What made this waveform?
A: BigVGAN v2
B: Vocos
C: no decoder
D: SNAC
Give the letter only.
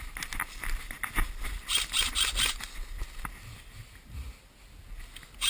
C